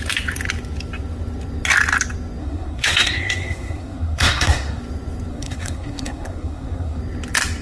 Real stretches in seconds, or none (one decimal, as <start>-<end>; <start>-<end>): 0.0-2.4; 4.8-5.3; 7.0-7.6